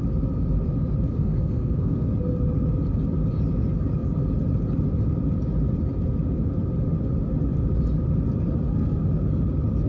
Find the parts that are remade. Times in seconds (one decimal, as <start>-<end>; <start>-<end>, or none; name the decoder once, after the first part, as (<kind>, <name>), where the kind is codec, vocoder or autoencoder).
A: 1.1-2.1 (codec, SNAC)

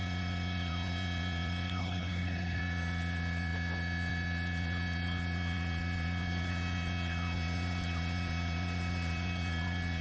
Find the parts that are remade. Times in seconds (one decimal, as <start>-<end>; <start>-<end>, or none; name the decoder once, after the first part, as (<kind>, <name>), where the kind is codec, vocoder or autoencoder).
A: 1.8-2.6 (codec, HILCodec)

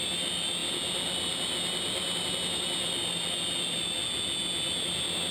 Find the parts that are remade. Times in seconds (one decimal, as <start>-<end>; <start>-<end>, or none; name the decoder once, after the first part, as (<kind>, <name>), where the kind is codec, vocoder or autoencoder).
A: none

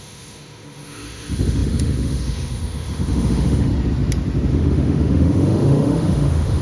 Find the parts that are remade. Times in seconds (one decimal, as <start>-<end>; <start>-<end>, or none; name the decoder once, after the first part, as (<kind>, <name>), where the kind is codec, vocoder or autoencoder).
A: 0.0-3.7 (autoencoder, DAC-VAE); 4.5-6.6